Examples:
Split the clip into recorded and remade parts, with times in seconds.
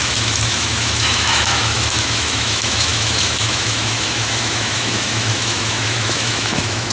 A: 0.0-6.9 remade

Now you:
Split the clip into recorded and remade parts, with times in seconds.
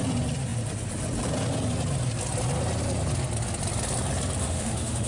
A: 0.0-4.4 recorded; 4.4-5.1 remade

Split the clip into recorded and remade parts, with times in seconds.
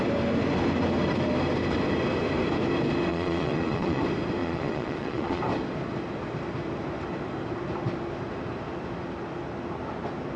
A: 0.0-3.1 recorded; 3.1-4.0 remade; 4.0-4.4 recorded; 4.4-5.4 remade; 5.4-10.4 recorded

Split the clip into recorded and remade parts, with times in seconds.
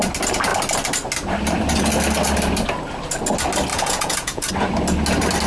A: 0.0-3.7 recorded; 3.7-4.5 remade; 4.5-5.5 recorded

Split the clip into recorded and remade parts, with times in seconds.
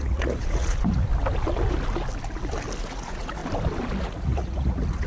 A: 0.0-1.1 remade; 1.1-2.8 recorded; 2.8-3.4 remade; 3.4-4.0 recorded; 4.0-5.1 remade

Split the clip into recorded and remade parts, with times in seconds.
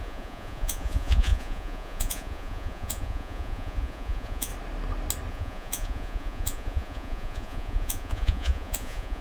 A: 0.0-4.5 remade; 4.5-5.3 recorded; 5.3-9.2 remade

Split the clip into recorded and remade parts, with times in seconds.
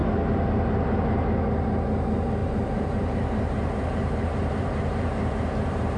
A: 0.0-2.4 recorded; 2.4-6.0 remade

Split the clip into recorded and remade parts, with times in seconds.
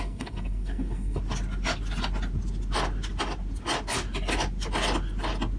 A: 0.0-1.2 remade; 1.2-5.6 recorded